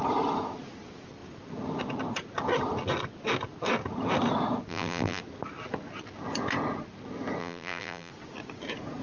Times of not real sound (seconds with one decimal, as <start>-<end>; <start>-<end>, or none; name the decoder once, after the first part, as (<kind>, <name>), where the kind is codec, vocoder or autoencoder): 4.7-5.2 (vocoder, BigVGAN v2); 7.4-8.1